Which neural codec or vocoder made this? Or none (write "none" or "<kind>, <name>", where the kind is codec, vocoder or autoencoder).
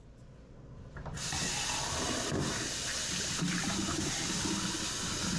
none